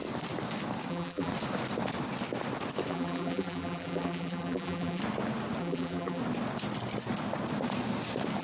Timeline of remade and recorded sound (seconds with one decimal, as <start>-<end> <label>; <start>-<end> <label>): 0.0-0.9 recorded; 0.9-1.3 remade; 1.3-2.9 recorded; 2.9-5.0 remade; 5.0-5.6 recorded; 5.6-6.2 remade; 6.2-8.4 recorded